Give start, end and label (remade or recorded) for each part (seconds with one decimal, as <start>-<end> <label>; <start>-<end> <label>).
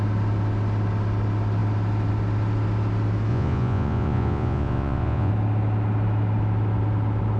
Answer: 0.0-3.3 recorded; 3.3-5.3 remade; 5.3-7.4 recorded